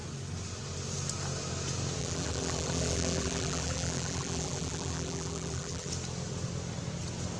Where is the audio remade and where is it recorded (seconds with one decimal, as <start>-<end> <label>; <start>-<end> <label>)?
0.0-2.0 recorded; 2.0-5.9 remade; 5.9-7.4 recorded